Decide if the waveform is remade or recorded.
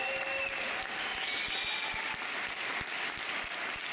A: recorded